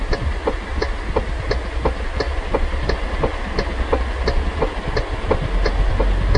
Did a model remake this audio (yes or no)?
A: no